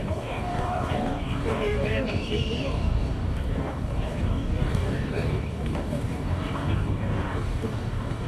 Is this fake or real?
fake